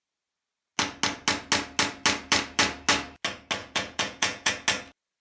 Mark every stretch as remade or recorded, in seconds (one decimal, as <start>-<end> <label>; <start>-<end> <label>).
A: 0.0-3.6 recorded; 3.6-4.5 remade; 4.5-5.2 recorded